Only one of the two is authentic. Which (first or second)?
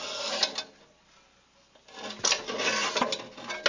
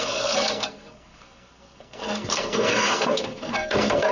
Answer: first